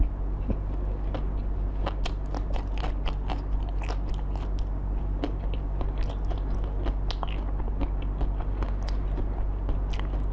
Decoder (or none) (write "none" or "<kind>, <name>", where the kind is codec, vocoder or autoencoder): none